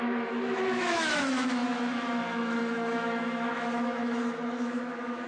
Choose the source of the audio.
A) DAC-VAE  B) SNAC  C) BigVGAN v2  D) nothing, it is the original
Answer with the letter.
A